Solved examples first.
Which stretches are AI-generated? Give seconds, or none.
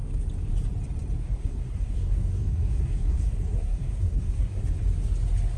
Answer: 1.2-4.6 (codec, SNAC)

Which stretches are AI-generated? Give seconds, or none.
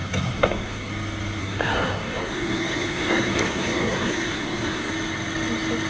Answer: 0.0-0.9 (codec, SNAC); 1.4-4.9